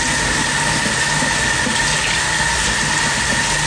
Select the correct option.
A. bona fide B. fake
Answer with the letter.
A